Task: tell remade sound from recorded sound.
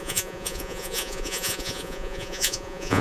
remade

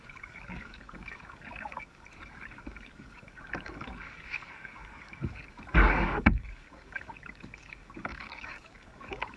remade